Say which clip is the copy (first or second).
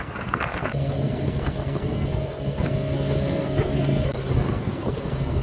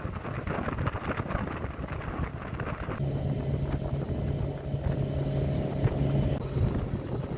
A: first